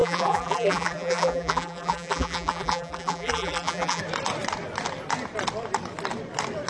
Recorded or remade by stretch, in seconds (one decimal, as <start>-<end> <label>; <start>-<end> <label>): 0.0-4.0 remade; 4.0-6.7 recorded